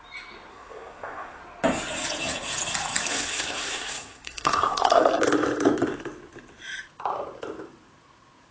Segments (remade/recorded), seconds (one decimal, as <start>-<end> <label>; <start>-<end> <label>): 0.0-0.5 recorded; 0.5-1.4 remade; 1.4-3.1 recorded; 3.1-5.1 remade; 5.1-8.5 recorded